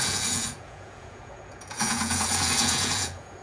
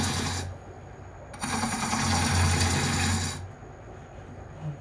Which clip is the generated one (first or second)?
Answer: first